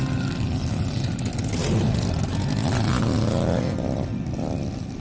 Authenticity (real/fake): real